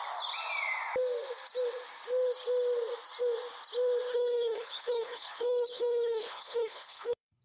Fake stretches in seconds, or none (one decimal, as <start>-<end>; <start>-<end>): 4.1-7.4